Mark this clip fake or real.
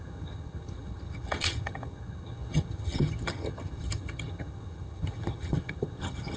fake